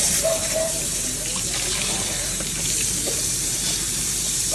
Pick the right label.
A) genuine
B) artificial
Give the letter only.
B